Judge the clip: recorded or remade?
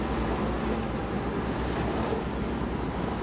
recorded